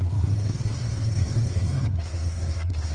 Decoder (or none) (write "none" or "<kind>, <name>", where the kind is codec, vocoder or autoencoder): codec, SNAC